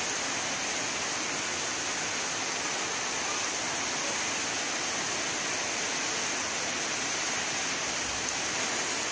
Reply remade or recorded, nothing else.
recorded